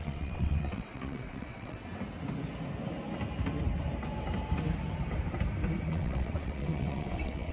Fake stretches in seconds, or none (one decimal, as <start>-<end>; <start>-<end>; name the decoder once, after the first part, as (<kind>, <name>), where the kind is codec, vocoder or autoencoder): 0.0-1.8 (vocoder, WaveNeXt); 5.9-7.5

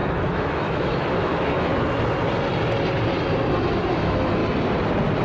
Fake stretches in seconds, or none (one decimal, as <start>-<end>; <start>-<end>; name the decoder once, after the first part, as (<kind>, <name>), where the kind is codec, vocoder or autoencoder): 0.0-1.7 (autoencoder, DAC-VAE); 3.7-4.4

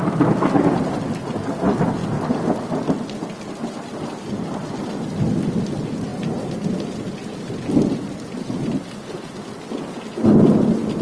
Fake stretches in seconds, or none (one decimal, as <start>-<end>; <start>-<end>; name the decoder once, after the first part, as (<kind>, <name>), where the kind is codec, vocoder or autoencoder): none

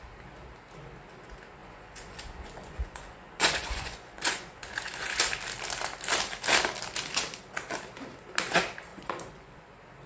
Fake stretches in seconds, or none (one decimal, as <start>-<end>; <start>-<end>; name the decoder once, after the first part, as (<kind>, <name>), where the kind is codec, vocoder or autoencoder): 1.6-5.2 (vocoder, Vocos); 8.9-9.7

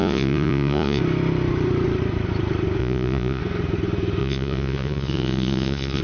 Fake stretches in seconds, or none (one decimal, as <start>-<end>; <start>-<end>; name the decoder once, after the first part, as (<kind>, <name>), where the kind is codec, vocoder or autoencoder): 0.0-1.0 (vocoder, Vocos); 2.8-3.4; 4.2-6.0

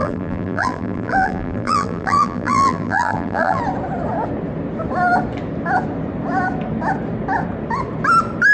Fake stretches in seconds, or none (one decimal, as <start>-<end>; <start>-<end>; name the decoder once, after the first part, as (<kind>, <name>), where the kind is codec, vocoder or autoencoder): 0.0-3.6 (vocoder, BigVGAN v2)

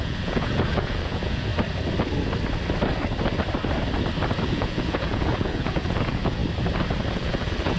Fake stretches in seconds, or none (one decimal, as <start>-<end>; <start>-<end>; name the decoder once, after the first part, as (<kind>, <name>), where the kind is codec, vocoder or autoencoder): 0.0-1.5 (vocoder, Vocos); 4.4-6.4; 7.1-7.8